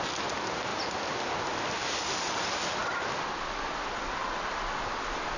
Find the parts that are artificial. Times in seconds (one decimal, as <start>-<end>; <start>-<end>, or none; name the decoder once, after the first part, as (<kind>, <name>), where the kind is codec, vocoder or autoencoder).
0.7-1.3 (vocoder, BigVGAN v2); 2.8-4.1